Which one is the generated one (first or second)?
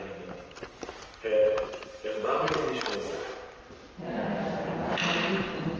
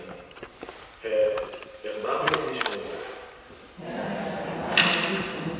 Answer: second